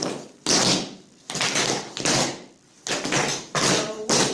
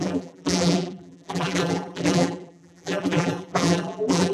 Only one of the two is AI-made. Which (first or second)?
second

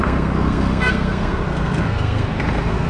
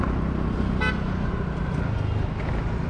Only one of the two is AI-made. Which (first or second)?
first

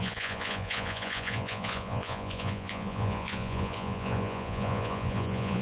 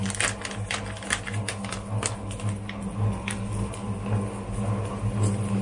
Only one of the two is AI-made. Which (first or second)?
first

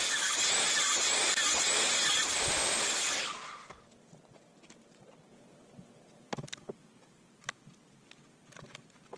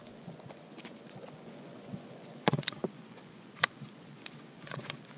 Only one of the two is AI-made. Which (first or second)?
second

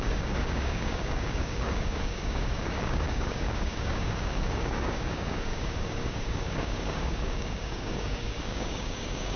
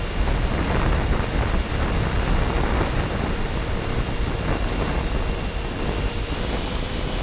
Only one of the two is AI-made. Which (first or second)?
first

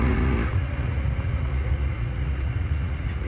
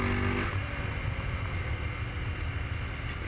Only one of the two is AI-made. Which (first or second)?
first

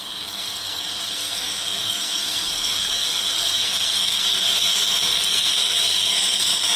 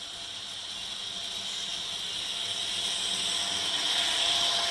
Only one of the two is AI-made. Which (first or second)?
first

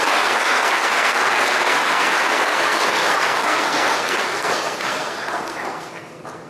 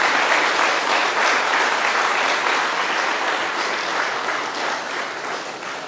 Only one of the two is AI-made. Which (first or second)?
first